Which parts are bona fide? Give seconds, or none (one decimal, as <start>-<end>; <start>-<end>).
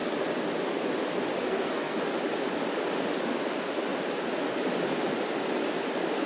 0.0-1.4; 2.0-6.3